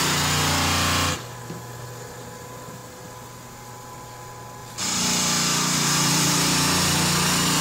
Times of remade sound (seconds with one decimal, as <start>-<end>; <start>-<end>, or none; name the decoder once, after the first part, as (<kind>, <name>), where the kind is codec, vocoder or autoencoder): 4.6-6.3 (vocoder, BigVGAN v2)